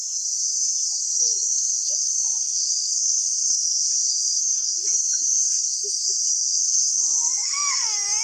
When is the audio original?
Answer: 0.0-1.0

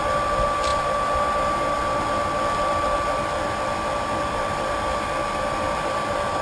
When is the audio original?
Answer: 0.0-6.4

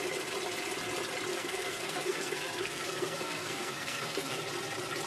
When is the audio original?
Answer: 0.0-1.3; 4.4-5.1